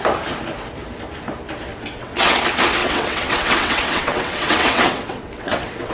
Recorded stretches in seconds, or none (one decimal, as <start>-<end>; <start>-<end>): 0.0-1.7; 2.4-2.8